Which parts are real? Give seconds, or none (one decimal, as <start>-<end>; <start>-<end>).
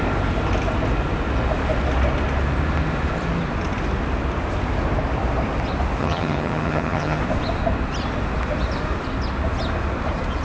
0.0-6.0; 7.2-10.4